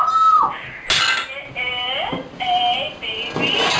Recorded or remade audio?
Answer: recorded